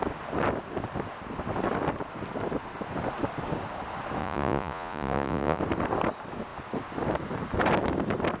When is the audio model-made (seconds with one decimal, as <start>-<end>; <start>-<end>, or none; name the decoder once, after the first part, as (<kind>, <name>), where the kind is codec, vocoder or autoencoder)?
4.2-5.6 (vocoder, Vocos)